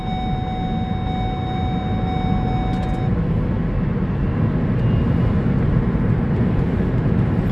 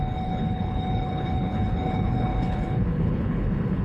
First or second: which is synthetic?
second